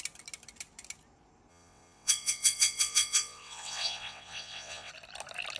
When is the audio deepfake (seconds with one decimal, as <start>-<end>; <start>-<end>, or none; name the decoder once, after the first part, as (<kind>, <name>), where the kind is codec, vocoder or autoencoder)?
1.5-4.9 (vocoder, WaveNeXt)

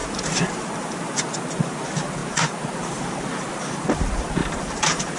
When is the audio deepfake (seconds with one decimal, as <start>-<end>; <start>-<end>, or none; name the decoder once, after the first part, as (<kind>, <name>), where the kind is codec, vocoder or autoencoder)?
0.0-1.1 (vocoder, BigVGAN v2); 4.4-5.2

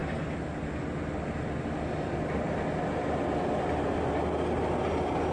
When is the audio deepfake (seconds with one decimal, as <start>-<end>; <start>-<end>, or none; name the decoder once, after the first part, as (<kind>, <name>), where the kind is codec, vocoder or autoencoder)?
none